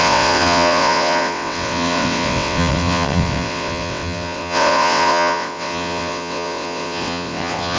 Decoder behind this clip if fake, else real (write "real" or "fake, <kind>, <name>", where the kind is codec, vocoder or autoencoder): fake, vocoder, WaveNeXt